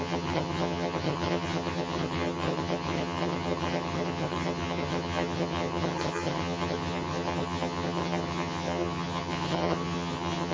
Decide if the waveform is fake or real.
fake